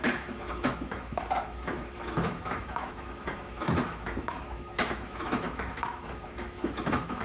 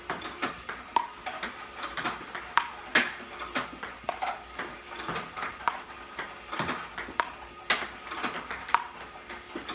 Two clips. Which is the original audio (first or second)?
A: second